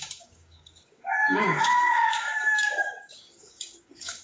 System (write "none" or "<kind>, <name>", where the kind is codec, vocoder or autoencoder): codec, DAC